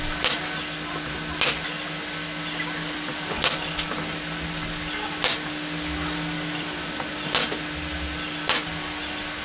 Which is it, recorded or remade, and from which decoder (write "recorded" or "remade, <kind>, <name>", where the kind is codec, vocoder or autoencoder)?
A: recorded